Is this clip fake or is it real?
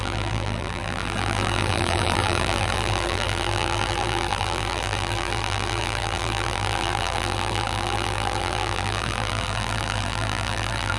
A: fake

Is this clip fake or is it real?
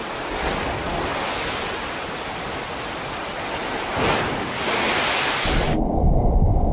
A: real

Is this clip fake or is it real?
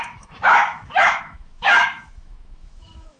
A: fake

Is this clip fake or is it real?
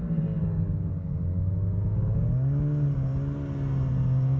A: real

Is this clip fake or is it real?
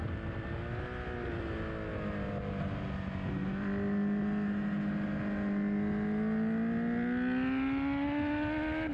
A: real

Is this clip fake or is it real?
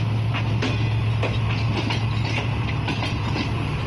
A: real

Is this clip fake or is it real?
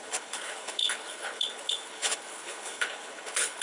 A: fake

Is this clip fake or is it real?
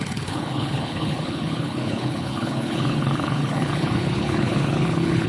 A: fake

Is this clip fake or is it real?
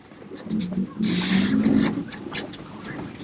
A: real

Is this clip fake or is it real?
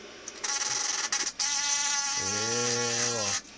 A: real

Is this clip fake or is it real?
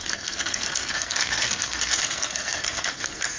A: fake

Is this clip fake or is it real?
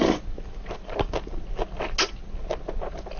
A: real